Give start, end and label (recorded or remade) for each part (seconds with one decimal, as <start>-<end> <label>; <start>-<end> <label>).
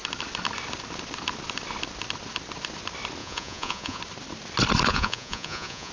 0.0-3.2 recorded; 3.2-4.0 remade; 4.0-4.9 recorded; 4.9-5.9 remade